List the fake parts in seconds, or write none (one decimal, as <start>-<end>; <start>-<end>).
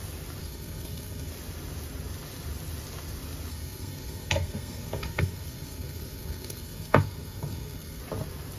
0.4-1.3; 3.5-8.0